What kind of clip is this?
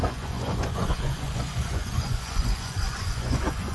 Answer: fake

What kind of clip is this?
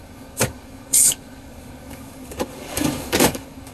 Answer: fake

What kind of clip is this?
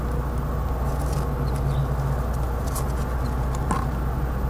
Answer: real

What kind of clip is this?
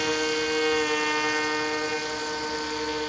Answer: real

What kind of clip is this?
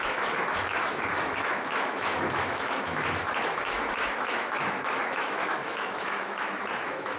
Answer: fake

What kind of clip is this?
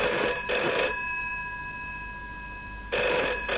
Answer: real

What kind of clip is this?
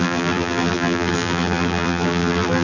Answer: fake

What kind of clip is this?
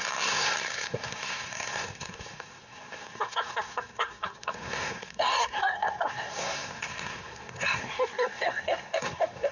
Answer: fake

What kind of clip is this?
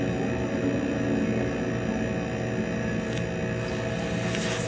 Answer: real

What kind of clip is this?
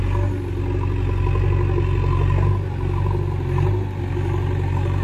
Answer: real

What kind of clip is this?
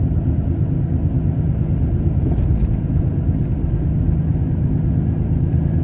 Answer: real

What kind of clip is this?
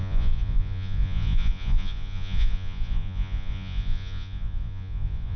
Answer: fake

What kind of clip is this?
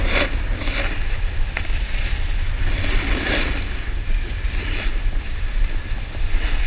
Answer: real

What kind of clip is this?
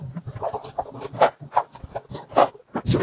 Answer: real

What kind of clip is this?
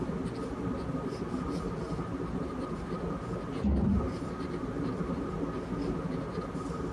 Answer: real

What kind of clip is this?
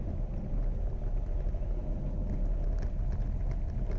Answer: real